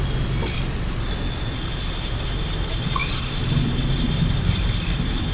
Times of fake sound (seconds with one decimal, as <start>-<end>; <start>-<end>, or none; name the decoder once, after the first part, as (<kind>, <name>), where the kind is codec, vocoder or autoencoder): 0.0-5.3 (vocoder, BigVGAN v2)